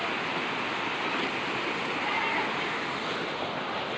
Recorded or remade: recorded